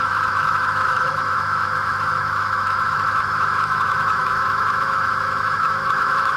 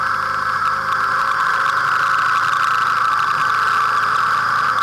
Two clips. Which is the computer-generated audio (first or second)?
first